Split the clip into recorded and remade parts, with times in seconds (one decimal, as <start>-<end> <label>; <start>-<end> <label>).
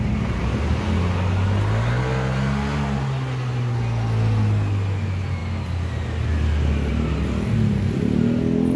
0.0-8.8 recorded